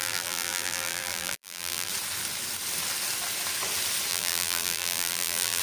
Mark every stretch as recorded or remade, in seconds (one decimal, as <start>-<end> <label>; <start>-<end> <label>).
0.0-1.9 remade; 1.9-4.1 recorded; 4.1-5.6 remade